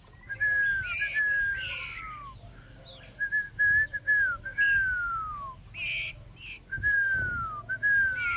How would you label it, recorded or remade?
recorded